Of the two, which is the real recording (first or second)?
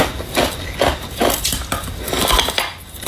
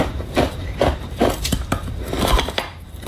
first